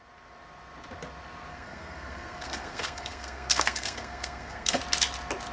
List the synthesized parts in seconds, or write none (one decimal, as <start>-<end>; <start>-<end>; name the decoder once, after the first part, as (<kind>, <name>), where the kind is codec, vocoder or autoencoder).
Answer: 1.5-4.8 (codec, SNAC)